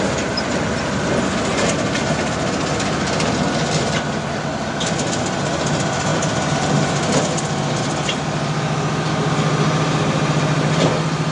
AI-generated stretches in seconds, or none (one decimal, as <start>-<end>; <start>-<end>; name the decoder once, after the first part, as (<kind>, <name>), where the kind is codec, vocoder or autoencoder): none